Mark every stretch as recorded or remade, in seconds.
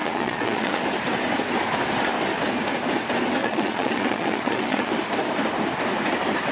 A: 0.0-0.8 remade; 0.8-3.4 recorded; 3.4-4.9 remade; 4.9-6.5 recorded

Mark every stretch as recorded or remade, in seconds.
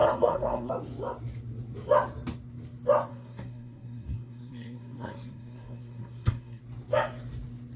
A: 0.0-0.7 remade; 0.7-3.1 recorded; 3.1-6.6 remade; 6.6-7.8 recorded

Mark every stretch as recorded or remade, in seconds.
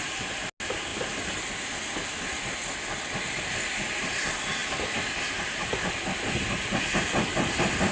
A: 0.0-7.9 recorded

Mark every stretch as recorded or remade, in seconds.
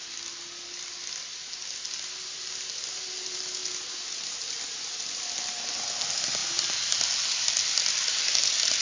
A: 0.0-8.8 recorded